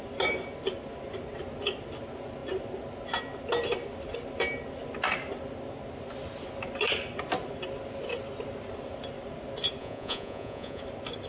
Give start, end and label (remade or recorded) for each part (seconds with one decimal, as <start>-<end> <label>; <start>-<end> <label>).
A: 0.0-9.8 recorded; 9.8-10.8 remade; 10.8-11.3 recorded